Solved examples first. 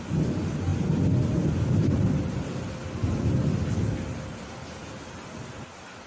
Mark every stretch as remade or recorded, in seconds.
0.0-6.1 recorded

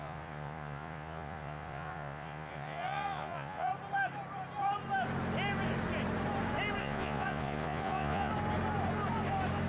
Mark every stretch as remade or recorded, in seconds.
0.0-3.7 remade; 3.7-6.8 recorded; 6.8-8.3 remade; 8.3-9.7 recorded

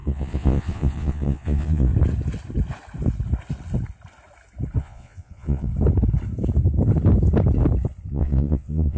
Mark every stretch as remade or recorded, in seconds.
0.0-1.9 remade; 1.9-4.8 recorded; 4.8-5.7 remade; 5.7-8.1 recorded; 8.1-9.0 remade

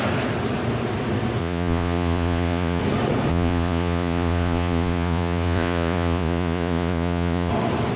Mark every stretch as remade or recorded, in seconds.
0.0-1.4 recorded; 1.4-2.8 remade; 2.8-3.3 recorded; 3.3-7.5 remade; 7.5-8.0 recorded

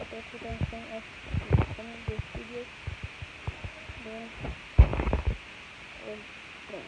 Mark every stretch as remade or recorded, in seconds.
0.0-6.9 recorded

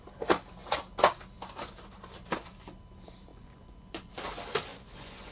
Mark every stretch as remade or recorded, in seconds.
0.0-3.3 recorded; 3.3-4.1 remade; 4.1-4.7 recorded; 4.7-5.3 remade

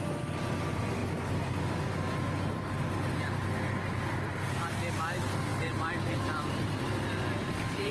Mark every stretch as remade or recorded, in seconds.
0.0-7.9 recorded

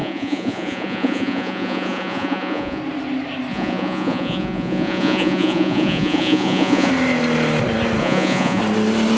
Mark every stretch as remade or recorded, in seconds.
0.0-2.8 remade; 2.8-3.5 recorded; 3.5-6.9 remade; 6.9-8.0 recorded; 8.0-8.6 remade; 8.6-9.2 recorded